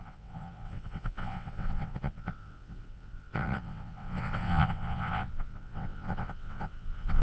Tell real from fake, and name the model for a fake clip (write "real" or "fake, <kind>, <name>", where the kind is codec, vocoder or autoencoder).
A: fake, vocoder, WaveNeXt